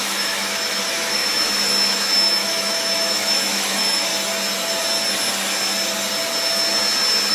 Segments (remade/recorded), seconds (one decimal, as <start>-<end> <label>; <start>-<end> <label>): 0.0-4.1 remade; 4.1-7.3 recorded